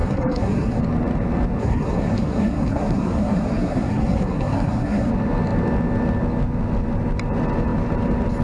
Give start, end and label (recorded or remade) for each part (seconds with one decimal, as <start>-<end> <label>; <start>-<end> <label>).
0.0-0.8 remade; 0.8-1.6 recorded; 1.6-5.1 remade; 5.1-8.4 recorded